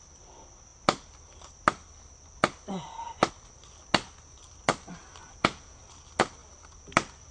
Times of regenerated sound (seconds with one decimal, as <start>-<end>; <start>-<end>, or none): 5.2-5.8